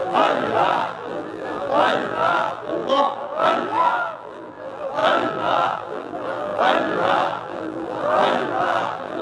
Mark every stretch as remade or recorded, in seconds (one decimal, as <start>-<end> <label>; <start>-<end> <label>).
0.0-9.2 remade

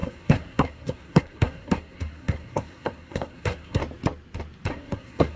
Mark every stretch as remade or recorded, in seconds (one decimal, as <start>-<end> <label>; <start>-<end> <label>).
0.0-3.8 remade; 3.8-4.7 recorded; 4.7-5.4 remade

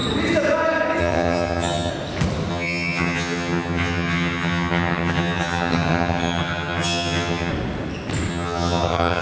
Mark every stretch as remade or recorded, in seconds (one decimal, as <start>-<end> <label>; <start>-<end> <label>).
0.0-1.0 recorded; 1.0-1.9 remade; 1.9-2.5 recorded; 2.5-7.5 remade; 7.5-8.3 recorded; 8.3-9.2 remade

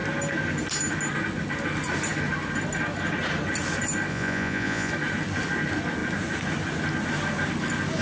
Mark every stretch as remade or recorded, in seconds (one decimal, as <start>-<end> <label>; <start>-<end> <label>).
0.0-4.1 recorded; 4.1-4.9 remade; 4.9-8.0 recorded

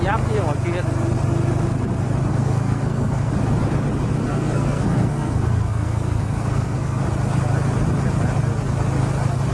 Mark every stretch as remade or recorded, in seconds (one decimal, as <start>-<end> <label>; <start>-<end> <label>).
0.0-2.3 recorded; 2.3-3.3 remade; 3.3-4.2 recorded; 4.2-7.0 remade; 7.0-9.5 recorded

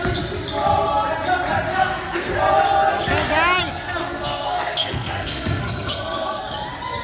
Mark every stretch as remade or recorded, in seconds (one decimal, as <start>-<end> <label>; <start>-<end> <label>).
0.0-1.7 recorded; 1.7-2.3 remade; 2.3-3.7 recorded; 3.7-6.4 remade; 6.4-7.0 recorded

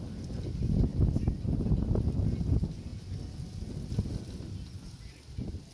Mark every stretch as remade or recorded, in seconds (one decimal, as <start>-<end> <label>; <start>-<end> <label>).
0.0-5.7 recorded